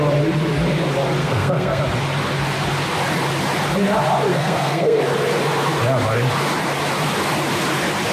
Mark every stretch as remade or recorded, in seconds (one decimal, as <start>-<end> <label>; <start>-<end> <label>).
0.0-1.2 recorded; 1.2-1.8 remade; 1.8-4.3 recorded; 4.3-5.0 remade; 5.0-8.1 recorded